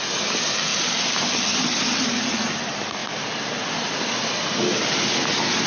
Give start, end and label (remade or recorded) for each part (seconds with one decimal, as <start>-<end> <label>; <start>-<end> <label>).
0.0-0.7 recorded; 0.7-2.6 remade; 2.6-3.0 recorded; 3.0-3.9 remade; 3.9-5.7 recorded